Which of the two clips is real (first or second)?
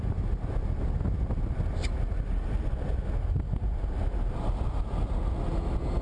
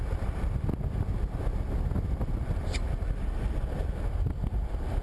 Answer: first